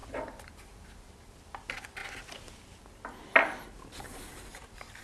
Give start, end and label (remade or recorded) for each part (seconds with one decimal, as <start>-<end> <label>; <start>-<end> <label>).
0.0-5.0 recorded